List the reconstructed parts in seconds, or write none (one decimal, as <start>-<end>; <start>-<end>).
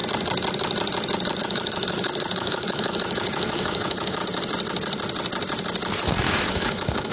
1.4-4.2; 6.2-7.1